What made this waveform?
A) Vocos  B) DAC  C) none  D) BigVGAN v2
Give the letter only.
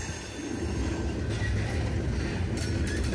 C